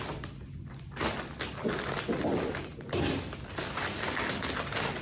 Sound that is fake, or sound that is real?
real